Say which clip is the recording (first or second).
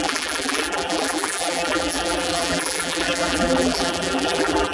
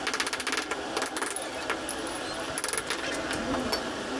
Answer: second